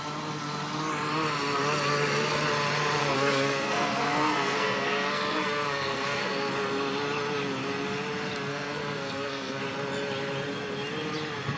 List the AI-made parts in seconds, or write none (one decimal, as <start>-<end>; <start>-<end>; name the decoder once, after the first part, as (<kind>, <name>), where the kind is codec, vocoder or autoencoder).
3.0-6.5 (codec, SNAC); 8.5-9.6